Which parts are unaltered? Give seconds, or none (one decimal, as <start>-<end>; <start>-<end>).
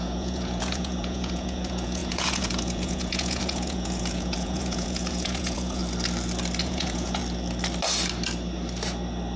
5.8-6.6; 7.2-9.4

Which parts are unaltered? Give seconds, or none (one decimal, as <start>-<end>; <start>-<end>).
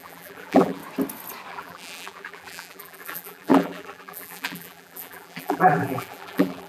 0.8-1.5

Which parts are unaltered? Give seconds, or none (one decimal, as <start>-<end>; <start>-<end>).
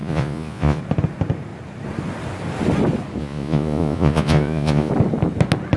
0.8-3.2; 4.9-5.8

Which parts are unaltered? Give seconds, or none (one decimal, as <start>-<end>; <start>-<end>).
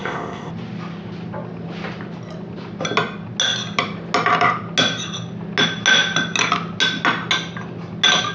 0.5-8.3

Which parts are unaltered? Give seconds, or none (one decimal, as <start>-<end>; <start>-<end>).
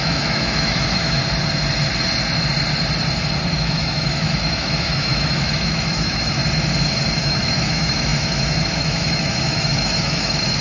1.2-3.5; 6.4-7.2